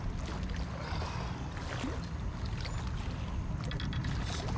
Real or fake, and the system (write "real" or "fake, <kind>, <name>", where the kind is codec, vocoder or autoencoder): real